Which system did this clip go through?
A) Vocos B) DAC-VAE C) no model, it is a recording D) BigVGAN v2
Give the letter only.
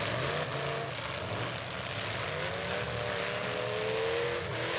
C